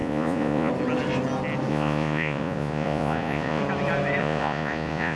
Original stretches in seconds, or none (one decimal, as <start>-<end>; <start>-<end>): 0.7-1.7; 3.6-4.2